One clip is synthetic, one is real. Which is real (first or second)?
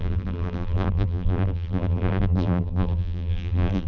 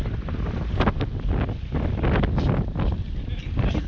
second